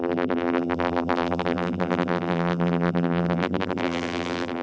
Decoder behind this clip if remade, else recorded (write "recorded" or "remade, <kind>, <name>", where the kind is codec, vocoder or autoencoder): remade, vocoder, BigVGAN v2